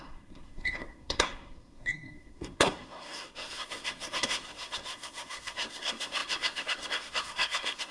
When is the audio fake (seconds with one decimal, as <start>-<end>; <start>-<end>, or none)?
0.0-7.9